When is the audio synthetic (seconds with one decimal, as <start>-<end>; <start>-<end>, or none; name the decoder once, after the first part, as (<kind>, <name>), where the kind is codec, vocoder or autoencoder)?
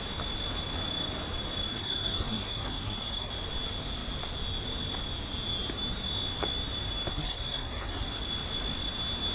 1.7-3.3 (codec, SNAC); 7.1-8.2